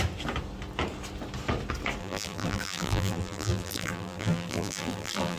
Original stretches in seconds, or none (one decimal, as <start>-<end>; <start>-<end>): 0.0-2.0

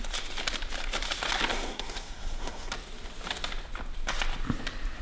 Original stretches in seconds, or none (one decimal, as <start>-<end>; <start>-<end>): 0.0-1.5; 2.7-5.0

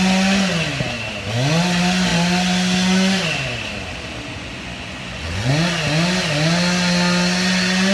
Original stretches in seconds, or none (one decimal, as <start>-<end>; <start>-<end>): 0.0-4.3; 5.5-7.9

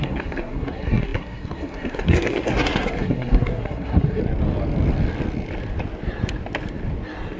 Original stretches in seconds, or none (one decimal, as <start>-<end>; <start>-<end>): 4.2-7.4

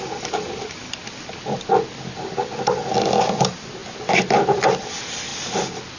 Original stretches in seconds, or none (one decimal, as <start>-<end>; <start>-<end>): 0.0-6.0

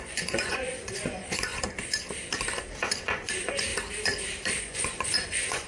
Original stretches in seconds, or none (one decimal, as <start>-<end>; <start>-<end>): 1.5-3.0; 3.7-4.6

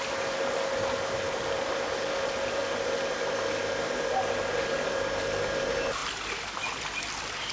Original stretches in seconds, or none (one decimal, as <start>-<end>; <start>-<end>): 0.0-7.5